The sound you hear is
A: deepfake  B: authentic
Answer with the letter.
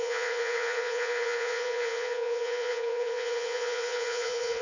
A